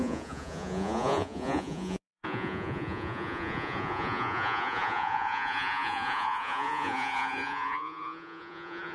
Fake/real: fake